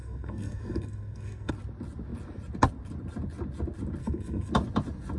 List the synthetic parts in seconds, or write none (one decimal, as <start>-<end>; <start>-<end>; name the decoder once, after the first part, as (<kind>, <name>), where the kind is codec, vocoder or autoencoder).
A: 0.0-1.5 (codec, SNAC); 4.0-4.5